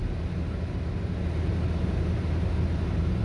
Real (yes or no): yes